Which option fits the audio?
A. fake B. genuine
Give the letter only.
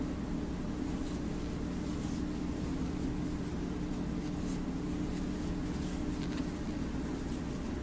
B